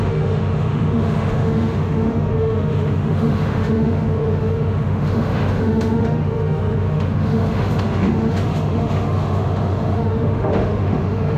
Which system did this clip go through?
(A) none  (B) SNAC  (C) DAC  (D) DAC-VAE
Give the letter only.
D